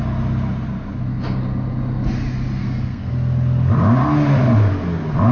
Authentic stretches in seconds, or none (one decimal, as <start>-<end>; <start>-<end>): 0.0-2.6; 3.1-5.3